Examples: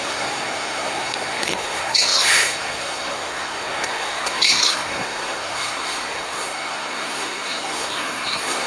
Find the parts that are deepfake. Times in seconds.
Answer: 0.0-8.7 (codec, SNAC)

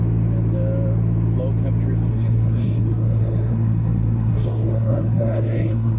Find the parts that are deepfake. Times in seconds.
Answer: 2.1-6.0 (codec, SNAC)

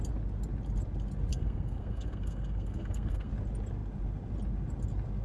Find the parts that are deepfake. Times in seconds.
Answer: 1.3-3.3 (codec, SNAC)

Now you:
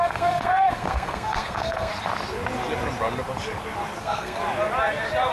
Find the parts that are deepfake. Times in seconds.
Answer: 0.0-1.9 (codec, SNAC); 4.0-4.4